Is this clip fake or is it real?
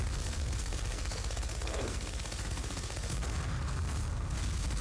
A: fake